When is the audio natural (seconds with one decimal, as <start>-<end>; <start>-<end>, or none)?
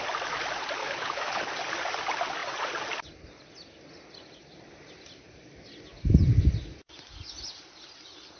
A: 0.0-0.8; 1.5-8.4